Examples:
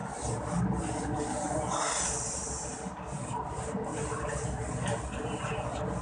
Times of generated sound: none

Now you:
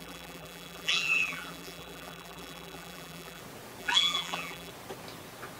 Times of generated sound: 0.0-3.4; 3.8-4.7

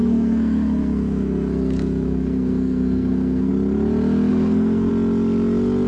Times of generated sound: 0.0-3.5; 4.3-4.9

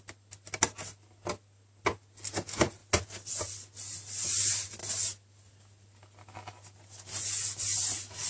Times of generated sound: none

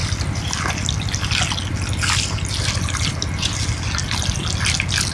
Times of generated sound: none